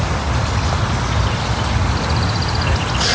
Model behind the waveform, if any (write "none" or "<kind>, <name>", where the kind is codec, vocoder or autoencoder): none